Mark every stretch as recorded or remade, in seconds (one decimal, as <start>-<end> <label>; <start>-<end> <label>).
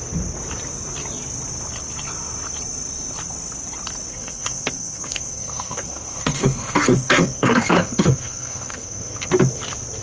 0.0-4.1 recorded; 4.1-9.3 remade; 9.3-10.0 recorded